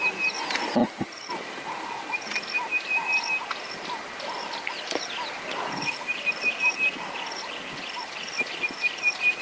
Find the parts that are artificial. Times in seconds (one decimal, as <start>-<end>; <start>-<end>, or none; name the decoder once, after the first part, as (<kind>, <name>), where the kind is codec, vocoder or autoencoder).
none